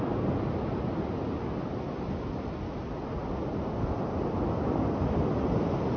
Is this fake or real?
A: real